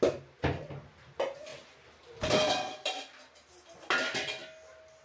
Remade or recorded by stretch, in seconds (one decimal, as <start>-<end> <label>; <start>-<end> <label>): 0.0-5.0 recorded